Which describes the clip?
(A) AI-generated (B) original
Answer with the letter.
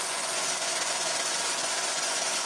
A